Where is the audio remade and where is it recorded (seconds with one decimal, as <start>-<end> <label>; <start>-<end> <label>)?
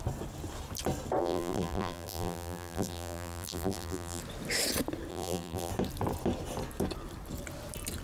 0.0-1.2 recorded; 1.2-4.2 remade; 4.2-5.1 recorded; 5.1-5.7 remade; 5.7-8.0 recorded